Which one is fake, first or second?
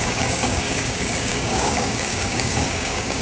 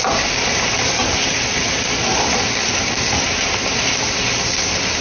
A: first